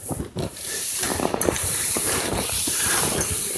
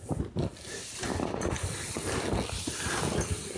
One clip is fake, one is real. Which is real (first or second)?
second